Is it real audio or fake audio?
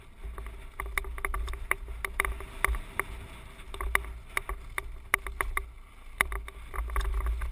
real